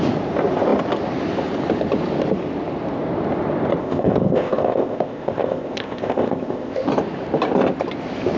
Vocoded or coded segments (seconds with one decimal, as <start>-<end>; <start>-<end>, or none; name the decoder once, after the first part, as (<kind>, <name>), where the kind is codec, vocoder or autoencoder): 3.8-6.9 (codec, ZipCodec)